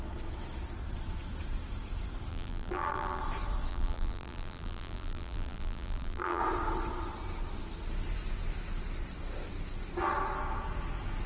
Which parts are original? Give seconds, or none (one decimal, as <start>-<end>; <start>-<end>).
0.0-2.3; 3.2-3.7; 6.4-11.3